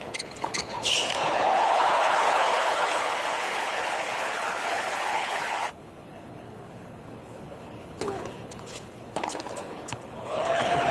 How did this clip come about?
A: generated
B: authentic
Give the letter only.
A